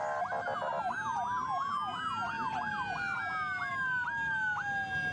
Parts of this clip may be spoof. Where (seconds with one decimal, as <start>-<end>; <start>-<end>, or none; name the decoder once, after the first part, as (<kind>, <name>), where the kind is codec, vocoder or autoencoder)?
none